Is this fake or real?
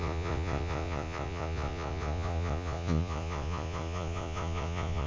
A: fake